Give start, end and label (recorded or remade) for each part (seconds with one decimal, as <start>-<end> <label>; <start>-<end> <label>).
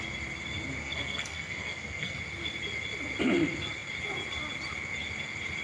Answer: 0.0-0.8 recorded; 0.8-2.2 remade; 2.2-5.6 recorded